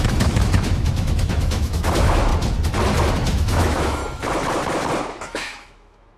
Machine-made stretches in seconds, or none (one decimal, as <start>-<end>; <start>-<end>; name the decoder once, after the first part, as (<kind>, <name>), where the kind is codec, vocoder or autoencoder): 0.0-2.3 (autoencoder, DAC-VAE); 3.1-4.0; 5.0-6.2